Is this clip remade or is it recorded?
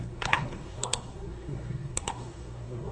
remade